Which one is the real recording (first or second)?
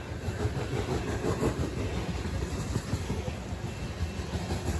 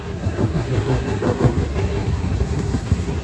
first